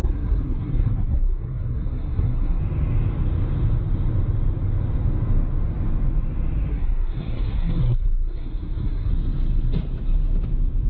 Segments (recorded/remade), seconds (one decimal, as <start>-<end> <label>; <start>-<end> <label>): 0.0-2.6 remade; 2.6-6.7 recorded; 6.7-9.1 remade; 9.1-10.9 recorded